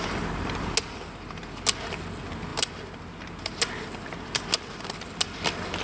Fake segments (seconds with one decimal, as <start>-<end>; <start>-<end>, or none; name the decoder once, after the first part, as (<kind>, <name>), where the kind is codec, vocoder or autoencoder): none